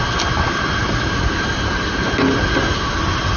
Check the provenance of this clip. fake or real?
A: real